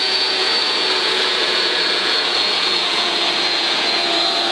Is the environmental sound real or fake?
fake